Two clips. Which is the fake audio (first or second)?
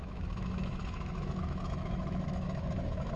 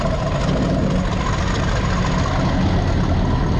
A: first